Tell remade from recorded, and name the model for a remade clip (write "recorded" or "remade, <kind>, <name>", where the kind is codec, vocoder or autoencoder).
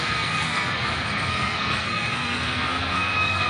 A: remade, codec, SNAC